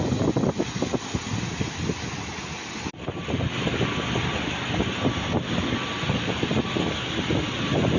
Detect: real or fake real